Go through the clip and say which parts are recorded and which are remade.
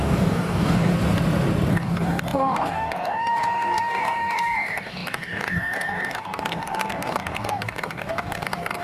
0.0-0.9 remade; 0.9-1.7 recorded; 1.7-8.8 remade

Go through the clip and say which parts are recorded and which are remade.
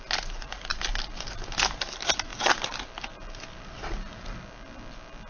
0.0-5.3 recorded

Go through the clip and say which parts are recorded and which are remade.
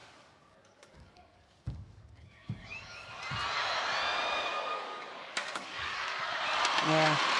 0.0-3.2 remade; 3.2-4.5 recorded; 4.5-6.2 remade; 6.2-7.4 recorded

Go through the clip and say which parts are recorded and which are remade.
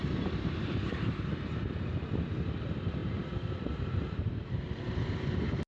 0.0-1.2 remade; 1.2-3.0 recorded; 3.0-4.6 remade; 4.6-5.7 recorded